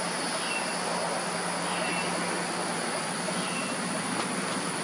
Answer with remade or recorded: recorded